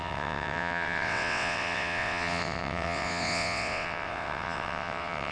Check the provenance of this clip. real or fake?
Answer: fake